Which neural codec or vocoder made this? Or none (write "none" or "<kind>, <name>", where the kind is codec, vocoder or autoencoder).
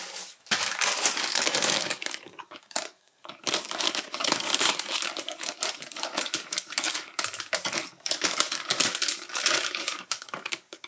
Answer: codec, DAC